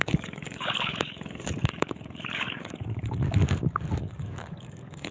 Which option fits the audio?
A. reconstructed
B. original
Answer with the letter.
A